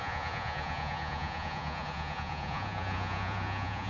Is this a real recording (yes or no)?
no